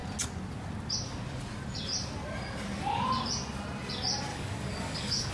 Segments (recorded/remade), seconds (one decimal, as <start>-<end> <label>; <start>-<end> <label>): 0.0-4.3 recorded; 4.3-5.3 remade